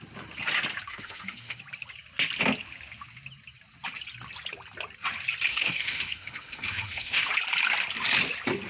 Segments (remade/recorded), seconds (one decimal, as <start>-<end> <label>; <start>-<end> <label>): 0.0-0.9 recorded; 0.9-1.6 remade; 1.6-5.5 recorded; 5.5-7.3 remade; 7.3-8.7 recorded